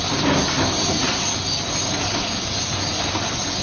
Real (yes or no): yes